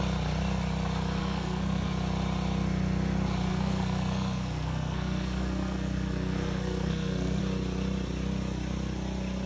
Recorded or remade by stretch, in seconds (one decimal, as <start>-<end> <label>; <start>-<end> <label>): 0.0-1.2 recorded; 1.2-1.9 remade; 1.9-3.5 recorded; 3.5-7.4 remade; 7.4-9.5 recorded